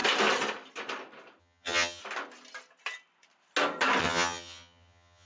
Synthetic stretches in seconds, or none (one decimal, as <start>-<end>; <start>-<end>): 1.4-2.0; 4.0-5.3